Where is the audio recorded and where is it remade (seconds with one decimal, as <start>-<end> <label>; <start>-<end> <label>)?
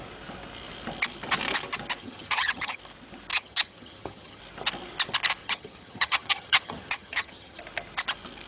0.0-2.0 recorded; 2.0-2.8 remade; 2.8-3.3 recorded; 3.3-4.4 remade; 4.4-5.4 recorded; 5.4-7.6 remade; 7.6-8.5 recorded